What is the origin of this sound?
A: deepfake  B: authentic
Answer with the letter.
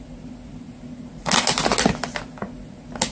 B